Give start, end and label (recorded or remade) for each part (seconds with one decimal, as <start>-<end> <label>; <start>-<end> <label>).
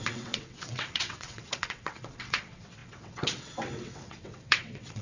0.0-5.0 remade